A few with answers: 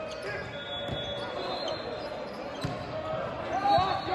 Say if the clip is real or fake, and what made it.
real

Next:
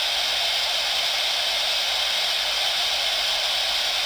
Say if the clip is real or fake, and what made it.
real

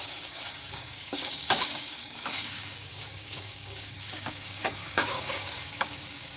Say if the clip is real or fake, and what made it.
fake, codec, DAC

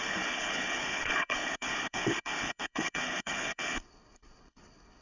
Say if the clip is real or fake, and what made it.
fake, codec, HILCodec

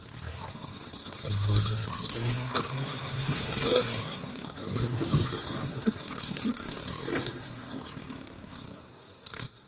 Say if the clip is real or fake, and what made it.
fake, codec, SNAC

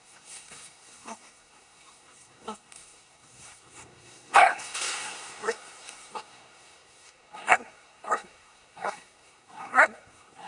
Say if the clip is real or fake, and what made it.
fake, codec, SNAC